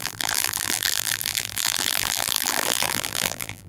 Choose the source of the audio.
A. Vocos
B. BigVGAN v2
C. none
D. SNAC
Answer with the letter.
B